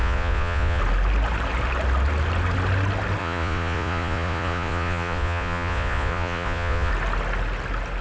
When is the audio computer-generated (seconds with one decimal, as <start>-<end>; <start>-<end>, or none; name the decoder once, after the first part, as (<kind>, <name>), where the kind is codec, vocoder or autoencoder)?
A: 0.0-0.8 (vocoder, Vocos); 3.2-6.9